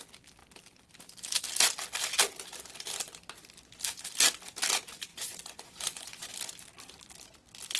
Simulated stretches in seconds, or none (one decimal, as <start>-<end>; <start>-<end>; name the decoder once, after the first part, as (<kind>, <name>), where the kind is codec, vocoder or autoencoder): 5.1-6.3 (vocoder, Vocos)